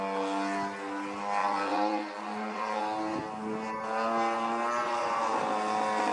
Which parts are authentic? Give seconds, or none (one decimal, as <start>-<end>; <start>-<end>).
0.0-1.4; 2.8-4.8; 5.3-6.1